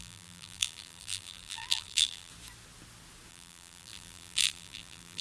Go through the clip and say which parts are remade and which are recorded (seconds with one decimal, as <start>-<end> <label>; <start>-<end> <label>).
0.0-2.3 remade; 2.3-3.3 recorded; 3.3-5.2 remade